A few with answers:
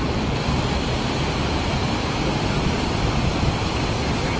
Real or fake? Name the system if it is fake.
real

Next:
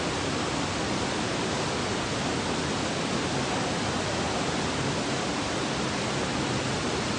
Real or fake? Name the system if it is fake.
real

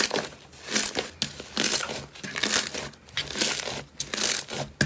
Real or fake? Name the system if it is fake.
real